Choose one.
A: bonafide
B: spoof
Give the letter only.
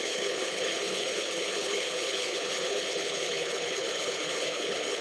B